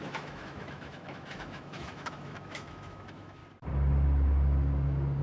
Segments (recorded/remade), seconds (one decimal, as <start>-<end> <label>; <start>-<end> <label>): 0.0-3.4 remade; 3.4-5.2 recorded